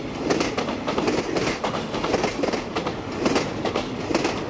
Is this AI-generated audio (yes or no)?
no